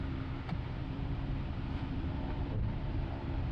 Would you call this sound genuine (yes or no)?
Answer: no